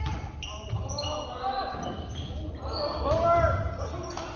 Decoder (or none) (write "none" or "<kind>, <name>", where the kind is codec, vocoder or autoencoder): none